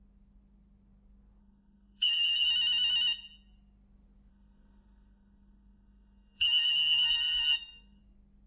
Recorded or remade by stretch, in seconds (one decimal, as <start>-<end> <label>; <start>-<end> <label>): 0.0-1.4 recorded; 1.4-2.5 remade; 2.5-4.3 recorded; 4.3-8.0 remade; 8.0-8.5 recorded

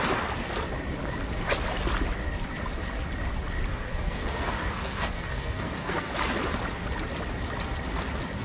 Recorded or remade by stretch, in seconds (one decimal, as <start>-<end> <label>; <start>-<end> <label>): 0.0-3.7 recorded; 3.7-6.1 remade; 6.1-8.4 recorded

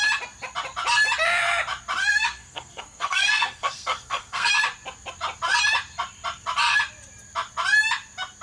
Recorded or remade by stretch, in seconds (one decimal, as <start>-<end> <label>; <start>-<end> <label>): 0.0-2.0 recorded; 2.0-4.5 remade; 4.5-8.4 recorded

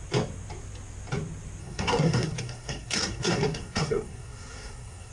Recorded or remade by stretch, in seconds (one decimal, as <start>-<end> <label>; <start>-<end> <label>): 0.0-1.6 recorded; 1.6-5.1 remade

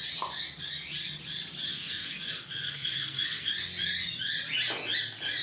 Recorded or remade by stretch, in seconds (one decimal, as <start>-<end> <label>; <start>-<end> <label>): 0.0-1.7 recorded; 1.7-3.5 remade; 3.5-5.4 recorded

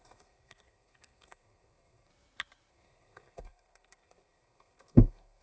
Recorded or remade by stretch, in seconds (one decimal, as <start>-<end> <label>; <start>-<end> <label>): 0.0-2.1 remade; 2.1-2.7 recorded; 2.7-5.4 remade

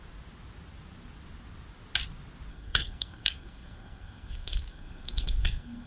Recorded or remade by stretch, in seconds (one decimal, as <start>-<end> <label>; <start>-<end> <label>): 0.0-2.5 recorded; 2.5-5.9 remade